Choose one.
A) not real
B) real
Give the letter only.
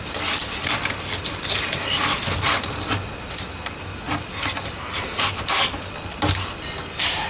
B